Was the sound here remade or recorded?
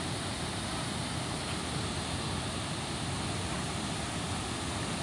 recorded